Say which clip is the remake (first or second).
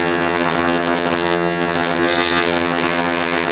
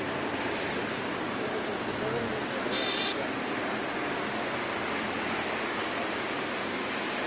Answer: first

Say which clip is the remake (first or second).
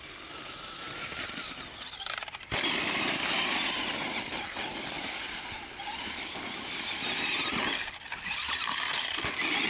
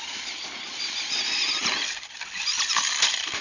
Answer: second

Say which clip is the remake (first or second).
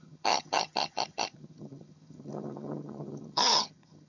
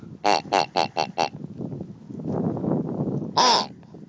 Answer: first